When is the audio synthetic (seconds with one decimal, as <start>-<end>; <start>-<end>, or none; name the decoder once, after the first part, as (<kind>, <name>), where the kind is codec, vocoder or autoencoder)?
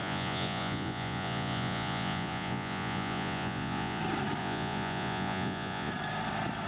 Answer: 0.0-4.0 (vocoder, Vocos); 4.4-5.9